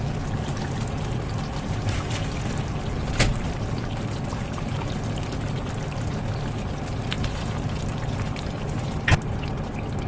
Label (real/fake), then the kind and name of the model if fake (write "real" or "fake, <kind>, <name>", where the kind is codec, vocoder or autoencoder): real